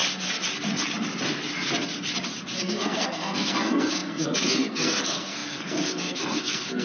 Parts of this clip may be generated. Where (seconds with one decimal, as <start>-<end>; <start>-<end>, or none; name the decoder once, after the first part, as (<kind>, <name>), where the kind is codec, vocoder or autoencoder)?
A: 2.6-6.8 (codec, SNAC)